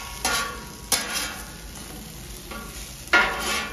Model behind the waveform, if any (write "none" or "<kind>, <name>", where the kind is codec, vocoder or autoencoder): none